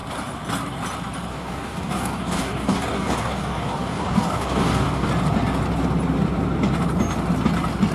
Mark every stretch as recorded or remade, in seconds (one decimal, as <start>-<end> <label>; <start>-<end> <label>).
0.0-1.3 recorded; 1.3-5.1 remade; 5.1-7.9 recorded